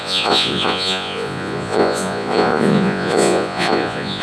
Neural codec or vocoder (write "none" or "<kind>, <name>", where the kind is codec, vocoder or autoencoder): vocoder, Vocos